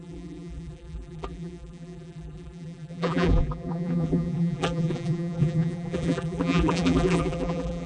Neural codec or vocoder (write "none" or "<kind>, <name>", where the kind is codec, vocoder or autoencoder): vocoder, BigVGAN v2